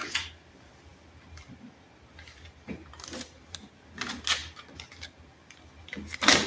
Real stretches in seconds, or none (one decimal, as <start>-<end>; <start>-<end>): 0.0-6.5